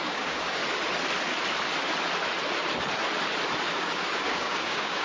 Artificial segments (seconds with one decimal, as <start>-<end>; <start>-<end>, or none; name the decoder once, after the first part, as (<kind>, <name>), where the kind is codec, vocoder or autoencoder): 0.0-0.6 (codec, DAC); 3.6-5.0